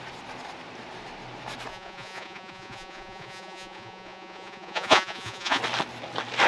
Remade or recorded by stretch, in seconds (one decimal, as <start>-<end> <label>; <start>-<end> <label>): 0.0-1.7 recorded; 1.7-5.6 remade; 5.6-6.5 recorded